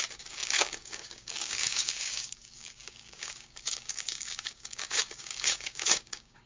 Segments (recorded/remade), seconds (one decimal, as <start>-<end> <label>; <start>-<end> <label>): 0.0-6.5 remade